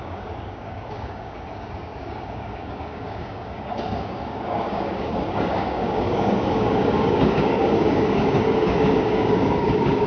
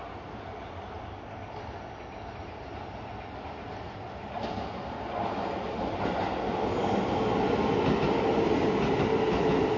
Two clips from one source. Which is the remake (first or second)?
first